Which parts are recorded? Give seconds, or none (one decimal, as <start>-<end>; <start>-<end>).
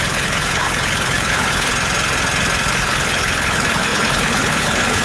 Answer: 1.7-2.7